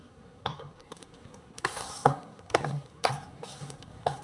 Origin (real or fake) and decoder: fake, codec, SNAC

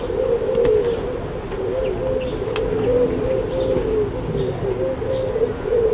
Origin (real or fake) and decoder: real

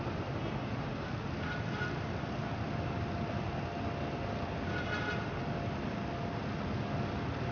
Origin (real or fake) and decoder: real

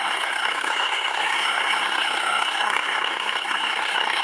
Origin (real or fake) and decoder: fake, codec, SNAC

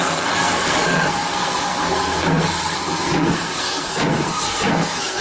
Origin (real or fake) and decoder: fake, codec, SNAC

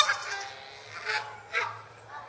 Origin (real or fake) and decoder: real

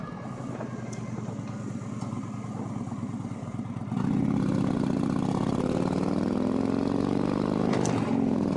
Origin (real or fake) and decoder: real